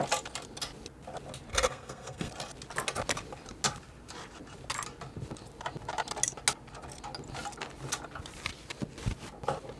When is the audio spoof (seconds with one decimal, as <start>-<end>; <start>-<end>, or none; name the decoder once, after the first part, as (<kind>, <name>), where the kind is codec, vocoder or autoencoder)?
1.5-2.3 (codec, SNAC)